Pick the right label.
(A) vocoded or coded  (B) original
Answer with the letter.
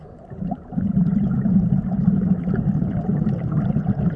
B